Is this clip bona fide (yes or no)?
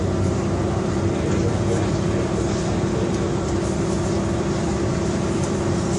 no